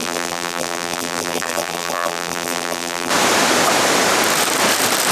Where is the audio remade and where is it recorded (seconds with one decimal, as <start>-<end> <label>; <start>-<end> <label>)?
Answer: 0.0-3.1 remade; 3.1-5.1 recorded

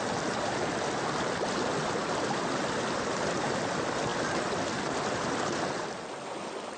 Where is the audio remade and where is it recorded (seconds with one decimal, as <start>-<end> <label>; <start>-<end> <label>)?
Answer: 0.0-6.8 recorded

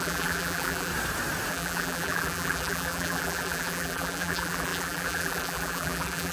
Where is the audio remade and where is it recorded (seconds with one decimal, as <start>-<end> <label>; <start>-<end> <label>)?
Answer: 0.0-0.9 remade; 0.9-1.5 recorded; 1.5-6.3 remade

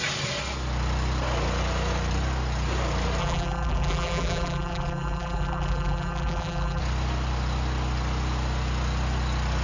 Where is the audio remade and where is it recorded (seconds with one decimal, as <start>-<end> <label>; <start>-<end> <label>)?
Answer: 0.0-3.2 recorded; 3.2-6.8 remade; 6.8-9.6 recorded

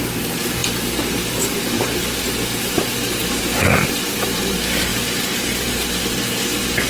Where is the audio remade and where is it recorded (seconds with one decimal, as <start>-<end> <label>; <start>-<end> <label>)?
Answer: 0.0-4.9 recorded; 4.9-6.0 remade; 6.0-6.9 recorded

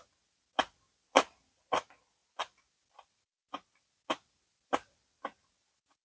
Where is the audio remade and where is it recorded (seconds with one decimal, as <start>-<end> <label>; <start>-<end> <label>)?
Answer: 0.0-6.0 recorded

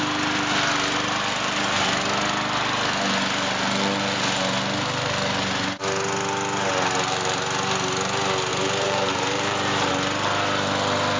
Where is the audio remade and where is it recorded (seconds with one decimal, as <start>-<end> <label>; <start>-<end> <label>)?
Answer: 0.0-8.5 recorded; 8.5-9.9 remade; 9.9-11.2 recorded

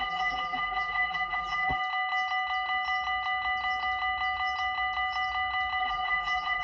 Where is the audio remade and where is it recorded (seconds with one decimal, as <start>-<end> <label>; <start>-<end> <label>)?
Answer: 0.0-1.8 remade; 1.8-5.8 recorded; 5.8-6.6 remade